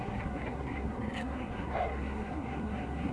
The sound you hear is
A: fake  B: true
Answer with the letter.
A